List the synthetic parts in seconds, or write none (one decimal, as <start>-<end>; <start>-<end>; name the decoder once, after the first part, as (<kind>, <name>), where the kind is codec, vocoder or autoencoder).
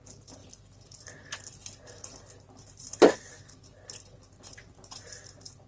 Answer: none